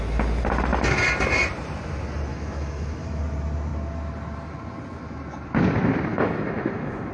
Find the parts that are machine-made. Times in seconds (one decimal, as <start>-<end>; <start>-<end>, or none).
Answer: 2.3-3.2; 6.1-7.1